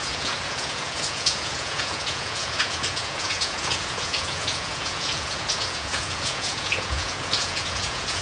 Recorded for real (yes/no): no